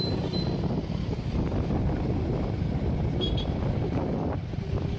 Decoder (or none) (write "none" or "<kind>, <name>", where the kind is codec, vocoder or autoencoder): none